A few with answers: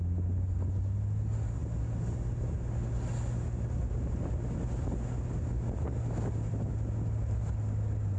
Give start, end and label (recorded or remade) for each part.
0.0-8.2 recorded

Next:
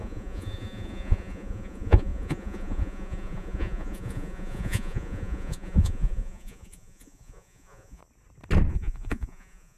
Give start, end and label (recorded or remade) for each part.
0.0-8.0 remade; 8.0-8.7 recorded; 8.7-9.8 remade